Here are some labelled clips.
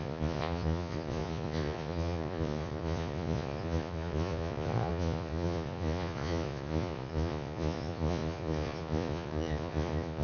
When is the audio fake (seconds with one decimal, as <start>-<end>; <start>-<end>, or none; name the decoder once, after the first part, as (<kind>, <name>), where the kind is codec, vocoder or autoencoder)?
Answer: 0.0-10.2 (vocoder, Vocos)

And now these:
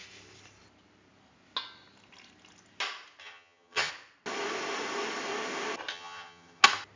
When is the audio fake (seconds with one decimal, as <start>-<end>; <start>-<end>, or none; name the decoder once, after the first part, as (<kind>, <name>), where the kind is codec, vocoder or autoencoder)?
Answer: 3.2-3.9 (vocoder, HiFi-GAN); 5.9-6.6

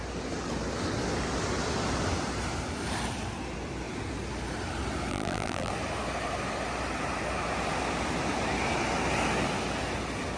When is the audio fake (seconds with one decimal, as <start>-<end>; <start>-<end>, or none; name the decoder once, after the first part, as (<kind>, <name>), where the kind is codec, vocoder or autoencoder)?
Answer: 5.1-5.7 (vocoder, BigVGAN v2)